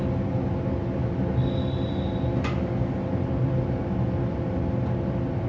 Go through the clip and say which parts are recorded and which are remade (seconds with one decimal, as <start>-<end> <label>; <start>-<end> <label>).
0.0-5.5 recorded